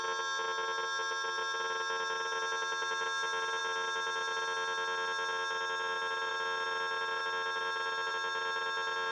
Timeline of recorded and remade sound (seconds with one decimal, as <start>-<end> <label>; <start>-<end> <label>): 0.0-9.1 recorded